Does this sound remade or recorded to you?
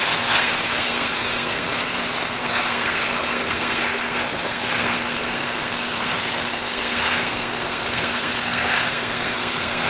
remade